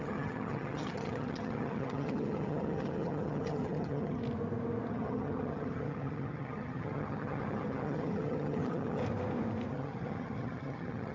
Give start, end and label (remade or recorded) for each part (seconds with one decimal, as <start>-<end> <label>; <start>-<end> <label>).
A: 0.0-4.2 remade; 4.2-4.9 recorded; 4.9-9.0 remade; 9.0-9.7 recorded; 9.7-11.1 remade